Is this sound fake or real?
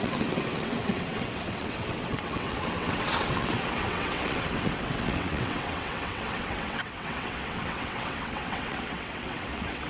fake